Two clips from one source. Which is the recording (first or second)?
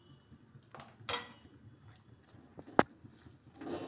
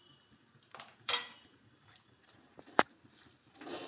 first